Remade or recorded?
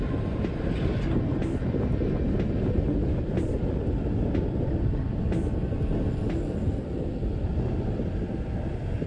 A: recorded